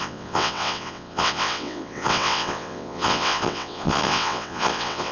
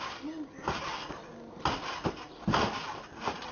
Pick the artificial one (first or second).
first